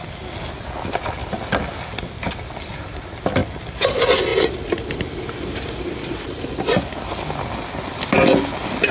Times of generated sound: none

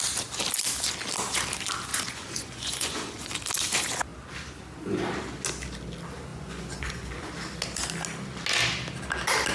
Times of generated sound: 1.9-3.4 (vocoder, Vocos); 6.3-7.3